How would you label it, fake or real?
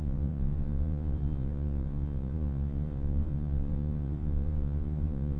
fake